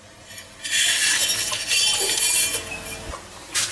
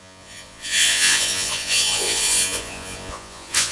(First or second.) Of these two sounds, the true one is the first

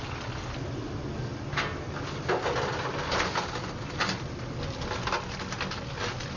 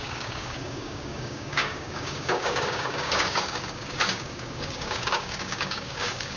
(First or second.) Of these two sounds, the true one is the first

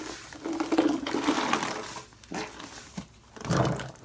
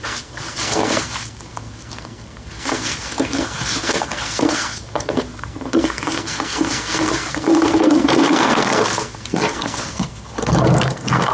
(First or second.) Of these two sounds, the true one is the first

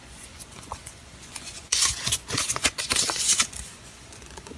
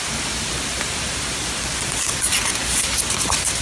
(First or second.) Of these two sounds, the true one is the second